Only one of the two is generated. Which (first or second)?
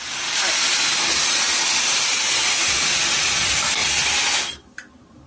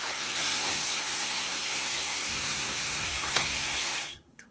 second